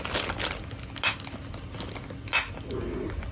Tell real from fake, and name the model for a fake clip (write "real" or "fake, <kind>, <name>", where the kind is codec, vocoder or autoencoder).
real